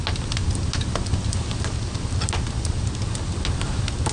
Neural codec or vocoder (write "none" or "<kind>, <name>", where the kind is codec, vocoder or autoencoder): none